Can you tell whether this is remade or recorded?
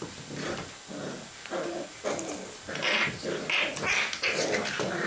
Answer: recorded